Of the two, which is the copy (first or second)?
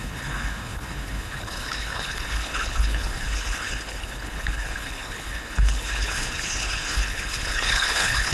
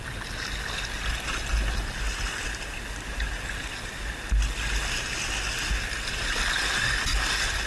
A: first